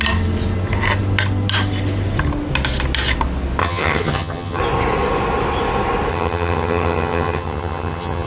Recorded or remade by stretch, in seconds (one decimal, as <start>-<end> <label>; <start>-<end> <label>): 0.0-3.6 recorded; 3.6-4.6 remade; 4.6-6.1 recorded; 6.1-8.3 remade